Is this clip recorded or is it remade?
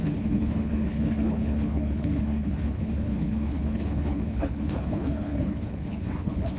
remade